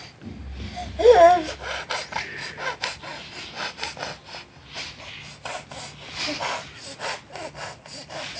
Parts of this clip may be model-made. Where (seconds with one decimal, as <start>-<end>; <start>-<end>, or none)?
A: none